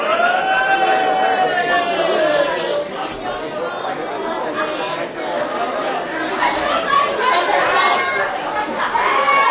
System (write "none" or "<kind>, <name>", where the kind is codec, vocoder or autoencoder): none